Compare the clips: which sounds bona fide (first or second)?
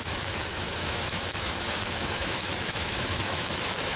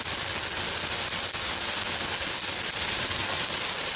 second